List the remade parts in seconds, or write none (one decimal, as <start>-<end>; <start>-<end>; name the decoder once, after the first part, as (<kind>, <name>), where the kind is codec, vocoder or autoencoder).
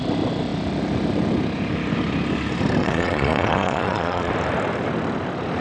2.8-4.3 (vocoder, Vocos)